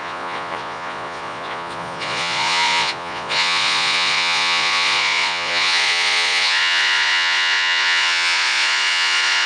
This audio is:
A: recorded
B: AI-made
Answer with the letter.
B